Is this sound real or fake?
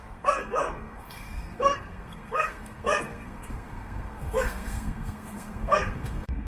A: fake